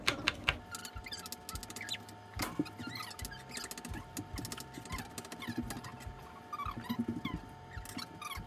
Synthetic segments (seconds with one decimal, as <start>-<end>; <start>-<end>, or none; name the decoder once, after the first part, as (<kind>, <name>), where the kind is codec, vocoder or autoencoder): none